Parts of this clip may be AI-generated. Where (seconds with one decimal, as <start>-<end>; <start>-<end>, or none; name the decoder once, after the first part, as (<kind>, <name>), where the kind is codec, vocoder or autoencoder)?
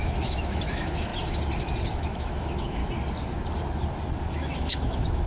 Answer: 0.0-1.1 (autoencoder, DAC-VAE); 1.9-2.8; 4.2-5.3